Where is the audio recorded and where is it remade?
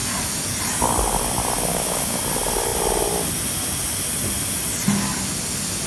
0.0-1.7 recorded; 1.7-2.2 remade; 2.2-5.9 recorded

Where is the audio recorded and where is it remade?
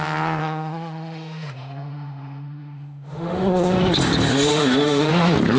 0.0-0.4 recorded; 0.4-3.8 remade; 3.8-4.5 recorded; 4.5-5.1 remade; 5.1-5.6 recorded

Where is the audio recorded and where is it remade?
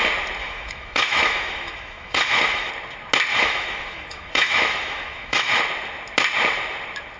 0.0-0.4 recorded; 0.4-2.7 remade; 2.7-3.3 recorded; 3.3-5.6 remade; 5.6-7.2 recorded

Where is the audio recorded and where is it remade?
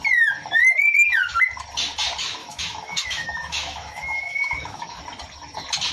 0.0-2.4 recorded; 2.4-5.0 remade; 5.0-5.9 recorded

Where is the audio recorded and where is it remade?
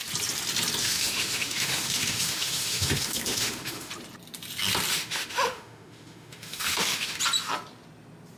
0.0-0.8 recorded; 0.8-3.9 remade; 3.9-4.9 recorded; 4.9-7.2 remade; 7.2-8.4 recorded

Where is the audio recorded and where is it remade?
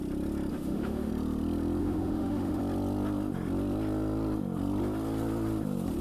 0.0-0.5 recorded; 0.5-1.1 remade; 1.1-1.8 recorded; 1.8-2.6 remade; 2.6-6.0 recorded